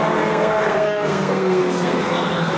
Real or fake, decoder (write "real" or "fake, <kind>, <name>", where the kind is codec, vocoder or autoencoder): fake, codec, SNAC